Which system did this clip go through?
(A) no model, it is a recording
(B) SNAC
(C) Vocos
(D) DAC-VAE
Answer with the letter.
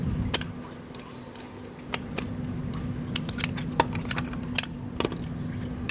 A